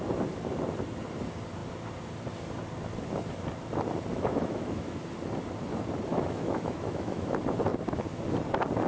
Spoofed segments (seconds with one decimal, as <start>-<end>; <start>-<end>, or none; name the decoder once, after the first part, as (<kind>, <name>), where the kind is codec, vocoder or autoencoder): 4.1-5.0 (autoencoder, DAC-VAE); 6.1-7.3